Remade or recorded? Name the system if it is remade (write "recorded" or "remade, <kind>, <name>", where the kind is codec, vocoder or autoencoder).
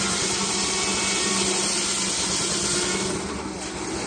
recorded